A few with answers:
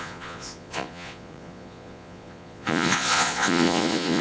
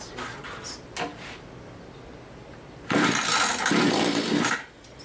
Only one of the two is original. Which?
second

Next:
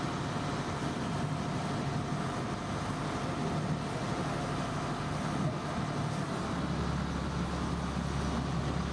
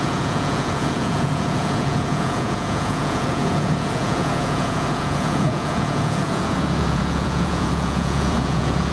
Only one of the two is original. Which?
first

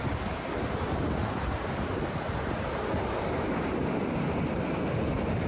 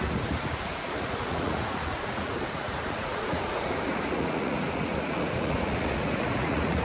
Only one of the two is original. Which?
first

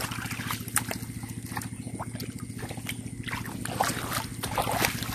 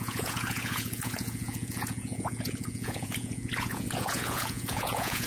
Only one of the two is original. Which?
first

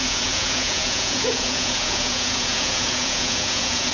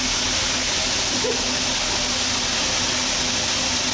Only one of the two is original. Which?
second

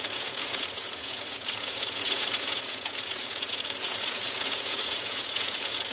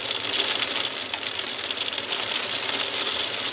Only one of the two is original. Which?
second